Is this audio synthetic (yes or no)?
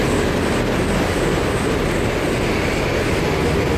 no